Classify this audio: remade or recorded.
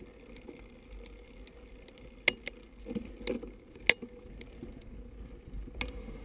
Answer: recorded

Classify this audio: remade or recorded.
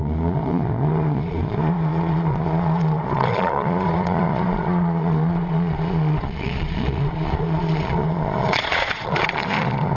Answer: remade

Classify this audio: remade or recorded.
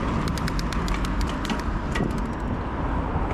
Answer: recorded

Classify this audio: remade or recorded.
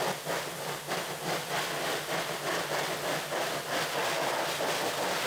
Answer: recorded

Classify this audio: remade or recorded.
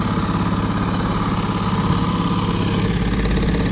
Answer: recorded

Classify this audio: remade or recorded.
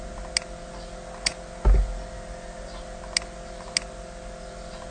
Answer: recorded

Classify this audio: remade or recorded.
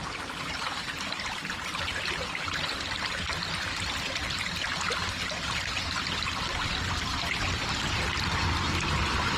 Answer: recorded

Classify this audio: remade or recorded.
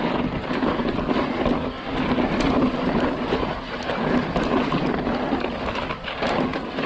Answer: recorded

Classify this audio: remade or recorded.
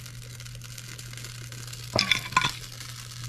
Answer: recorded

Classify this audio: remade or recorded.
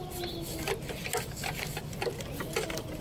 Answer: recorded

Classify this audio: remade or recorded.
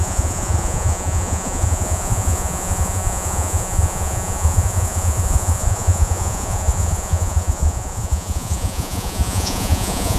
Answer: remade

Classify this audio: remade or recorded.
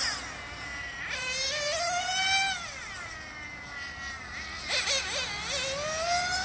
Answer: recorded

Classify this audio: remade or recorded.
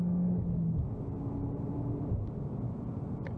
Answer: recorded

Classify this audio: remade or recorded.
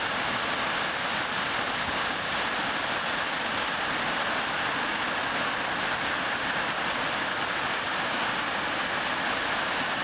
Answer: recorded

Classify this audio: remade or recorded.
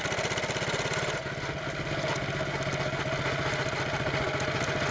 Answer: recorded